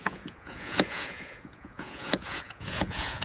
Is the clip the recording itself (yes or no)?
no